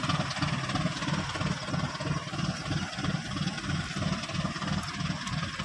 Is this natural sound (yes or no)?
yes